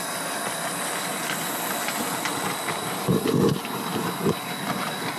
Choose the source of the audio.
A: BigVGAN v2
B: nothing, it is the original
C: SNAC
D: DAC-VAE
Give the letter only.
B